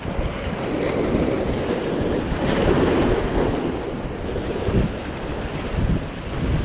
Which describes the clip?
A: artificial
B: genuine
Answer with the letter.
B